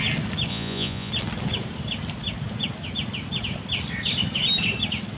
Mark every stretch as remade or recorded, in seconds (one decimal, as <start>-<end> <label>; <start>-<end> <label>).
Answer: 0.0-0.5 recorded; 0.5-1.1 remade; 1.1-5.2 recorded